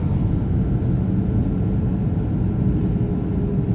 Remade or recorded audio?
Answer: recorded